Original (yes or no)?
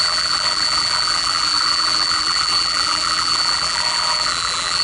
no